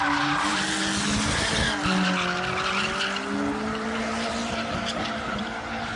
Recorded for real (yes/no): yes